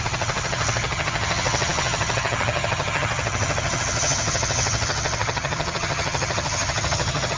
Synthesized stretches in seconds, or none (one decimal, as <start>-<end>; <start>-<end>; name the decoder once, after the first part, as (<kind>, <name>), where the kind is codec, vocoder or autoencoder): 0.0-7.4 (vocoder, HiFi-GAN)